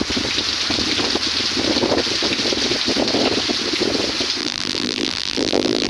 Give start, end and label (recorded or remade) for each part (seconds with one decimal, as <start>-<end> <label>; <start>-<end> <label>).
0.0-4.4 recorded; 4.4-5.9 remade